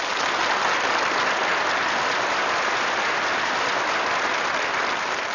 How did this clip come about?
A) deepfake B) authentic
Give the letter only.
B